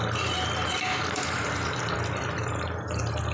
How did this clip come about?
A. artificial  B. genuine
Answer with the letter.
A